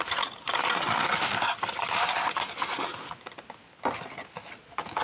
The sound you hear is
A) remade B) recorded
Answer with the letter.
B